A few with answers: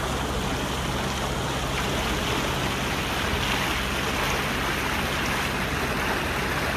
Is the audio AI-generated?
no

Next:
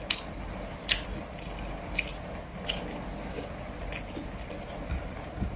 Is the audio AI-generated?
no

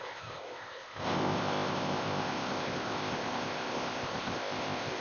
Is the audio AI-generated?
yes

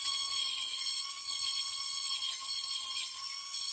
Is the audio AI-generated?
yes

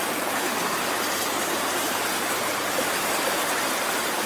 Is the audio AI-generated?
no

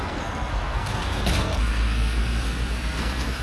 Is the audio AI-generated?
yes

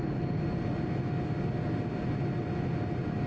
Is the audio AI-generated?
no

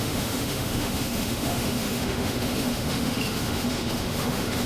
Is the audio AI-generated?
yes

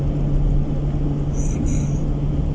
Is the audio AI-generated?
no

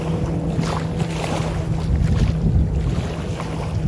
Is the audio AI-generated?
no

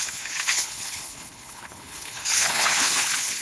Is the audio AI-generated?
yes